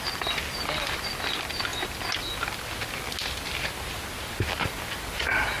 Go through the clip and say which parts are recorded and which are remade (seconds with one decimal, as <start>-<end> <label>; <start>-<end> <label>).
0.0-5.6 recorded